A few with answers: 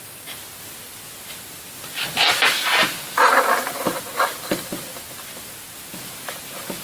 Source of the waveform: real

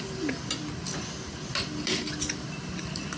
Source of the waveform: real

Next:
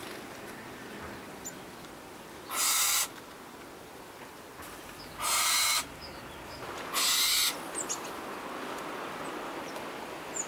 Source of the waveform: real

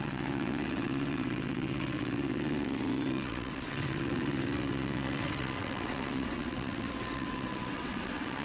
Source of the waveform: fake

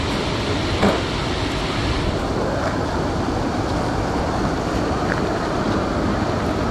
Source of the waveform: real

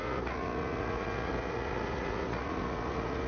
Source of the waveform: fake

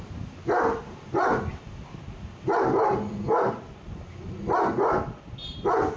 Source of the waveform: real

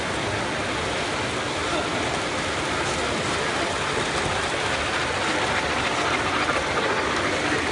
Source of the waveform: real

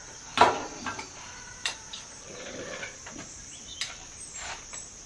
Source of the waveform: fake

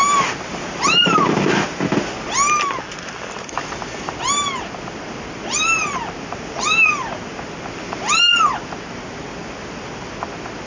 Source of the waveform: real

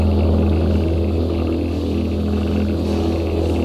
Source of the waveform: real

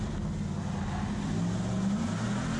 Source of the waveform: real